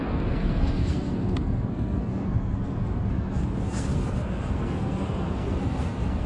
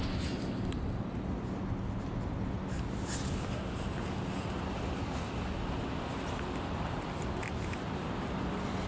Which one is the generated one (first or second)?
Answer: first